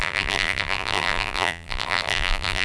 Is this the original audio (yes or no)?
no